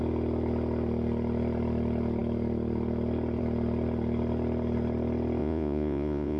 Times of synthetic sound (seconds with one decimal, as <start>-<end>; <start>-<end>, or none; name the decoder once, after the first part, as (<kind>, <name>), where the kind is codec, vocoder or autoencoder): 5.4-6.4 (vocoder, Vocos)

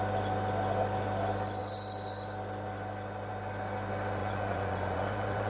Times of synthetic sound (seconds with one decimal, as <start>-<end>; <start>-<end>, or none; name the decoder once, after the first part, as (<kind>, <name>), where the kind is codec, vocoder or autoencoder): 4.2-5.5 (vocoder, Vocos)

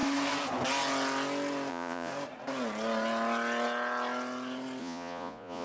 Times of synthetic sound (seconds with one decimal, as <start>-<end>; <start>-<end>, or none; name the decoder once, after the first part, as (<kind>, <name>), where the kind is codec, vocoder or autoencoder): 1.7-2.1 (vocoder, Vocos); 4.8-5.6